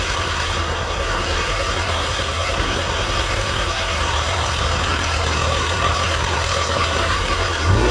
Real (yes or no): no